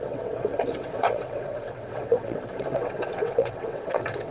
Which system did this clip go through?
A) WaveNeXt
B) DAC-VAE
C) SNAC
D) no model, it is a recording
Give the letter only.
A